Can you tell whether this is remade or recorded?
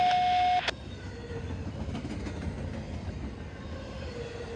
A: recorded